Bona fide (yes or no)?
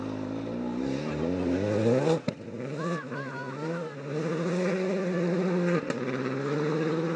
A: yes